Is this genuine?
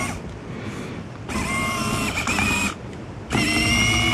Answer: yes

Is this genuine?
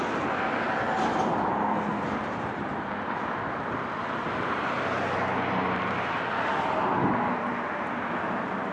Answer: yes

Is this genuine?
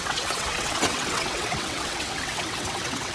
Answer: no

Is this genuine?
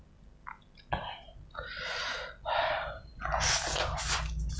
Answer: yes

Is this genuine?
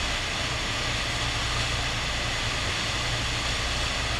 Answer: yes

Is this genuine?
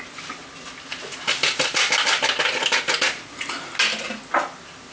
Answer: yes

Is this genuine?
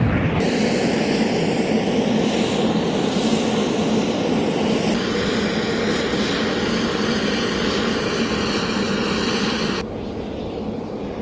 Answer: yes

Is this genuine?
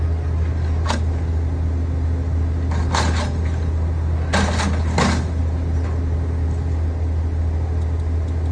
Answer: yes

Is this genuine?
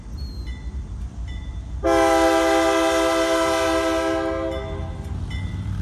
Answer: yes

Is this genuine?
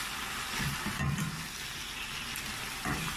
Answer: yes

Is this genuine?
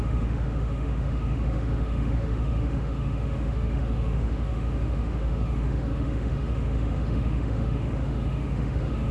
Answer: no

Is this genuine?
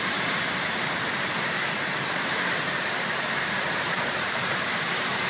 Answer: no